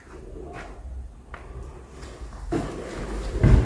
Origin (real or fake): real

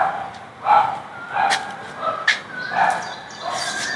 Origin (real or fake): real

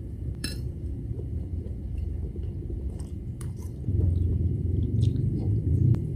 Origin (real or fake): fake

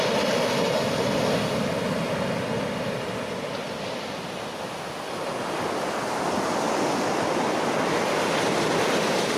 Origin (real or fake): real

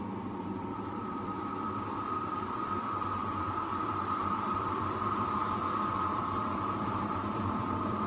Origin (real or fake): fake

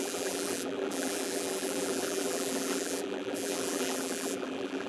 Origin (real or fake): fake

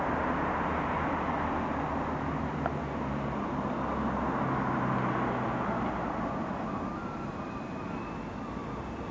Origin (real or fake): real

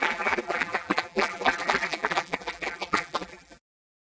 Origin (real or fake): fake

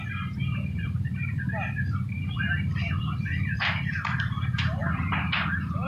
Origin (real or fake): fake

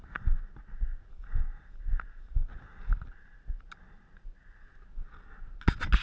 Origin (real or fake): real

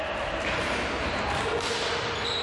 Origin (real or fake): real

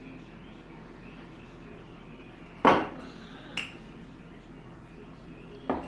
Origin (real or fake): real